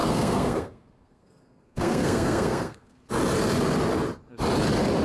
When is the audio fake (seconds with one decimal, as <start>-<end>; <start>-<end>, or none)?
0.0-3.0